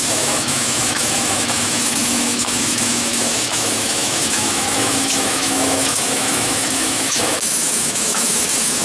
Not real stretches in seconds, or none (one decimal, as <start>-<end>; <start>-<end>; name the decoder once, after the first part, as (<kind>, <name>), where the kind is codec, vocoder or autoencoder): 0.0-8.8 (autoencoder, DAC-VAE)

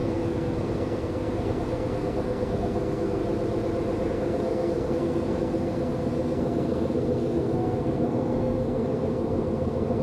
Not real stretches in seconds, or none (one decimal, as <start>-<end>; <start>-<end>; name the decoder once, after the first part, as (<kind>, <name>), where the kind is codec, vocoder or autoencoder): 0.0-3.2 (codec, SNAC); 4.1-10.0

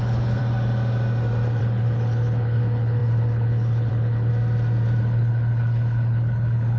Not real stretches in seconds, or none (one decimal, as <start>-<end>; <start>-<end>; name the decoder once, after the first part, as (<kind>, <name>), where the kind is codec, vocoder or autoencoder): 0.0-0.4 (codec, HILCodec); 1.6-4.3; 5.0-6.8